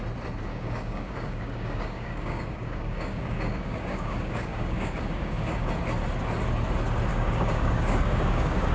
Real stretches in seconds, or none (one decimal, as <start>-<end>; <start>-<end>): 0.0-0.5; 5.7-7.1